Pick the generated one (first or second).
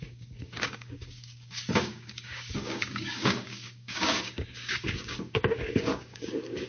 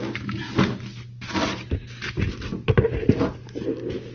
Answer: first